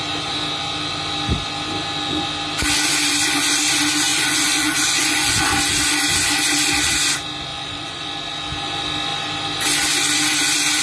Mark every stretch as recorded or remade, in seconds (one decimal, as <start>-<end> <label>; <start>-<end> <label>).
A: 0.0-4.1 recorded; 4.1-5.5 remade; 5.5-7.5 recorded; 7.5-8.1 remade; 8.1-10.8 recorded